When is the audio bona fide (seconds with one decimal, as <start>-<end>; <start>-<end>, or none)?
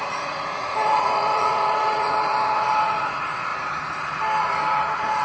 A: 3.5-4.4